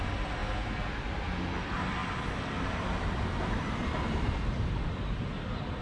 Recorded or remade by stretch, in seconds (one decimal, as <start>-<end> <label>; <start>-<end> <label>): 0.0-0.4 remade; 0.4-1.6 recorded; 1.6-5.8 remade